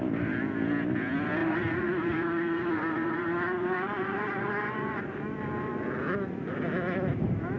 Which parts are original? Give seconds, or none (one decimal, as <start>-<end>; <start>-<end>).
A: 0.0-1.4; 5.0-7.6